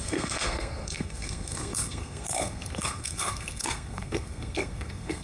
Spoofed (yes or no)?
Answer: yes